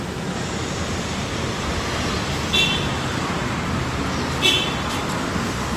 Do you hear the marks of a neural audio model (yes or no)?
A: no